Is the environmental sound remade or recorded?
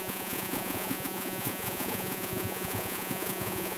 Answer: remade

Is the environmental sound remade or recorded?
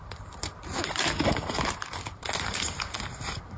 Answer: remade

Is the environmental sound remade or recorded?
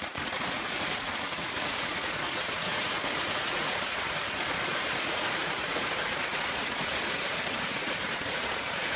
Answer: remade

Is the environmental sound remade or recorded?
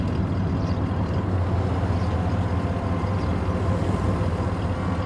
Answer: recorded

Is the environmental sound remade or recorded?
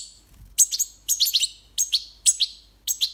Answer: recorded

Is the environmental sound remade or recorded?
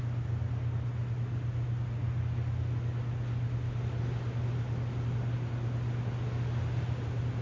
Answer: recorded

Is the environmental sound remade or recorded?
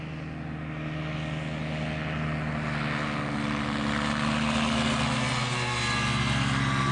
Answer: recorded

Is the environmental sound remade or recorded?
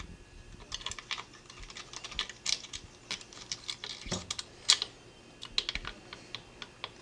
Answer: recorded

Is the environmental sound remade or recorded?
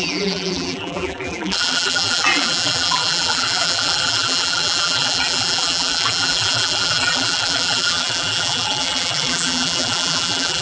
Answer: remade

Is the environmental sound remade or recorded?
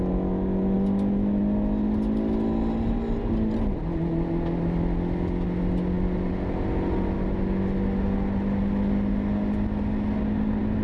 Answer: recorded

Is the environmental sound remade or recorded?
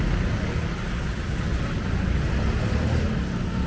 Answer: recorded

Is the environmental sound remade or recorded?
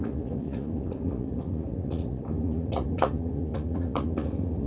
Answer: remade